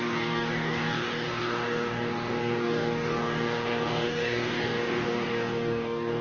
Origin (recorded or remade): remade